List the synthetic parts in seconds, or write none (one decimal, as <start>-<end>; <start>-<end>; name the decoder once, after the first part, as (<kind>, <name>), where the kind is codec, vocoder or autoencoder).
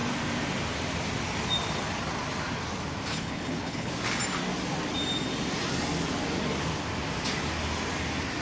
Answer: 3.1-3.9 (codec, HILCodec)